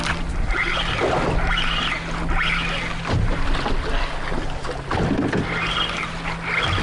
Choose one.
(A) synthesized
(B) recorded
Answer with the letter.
B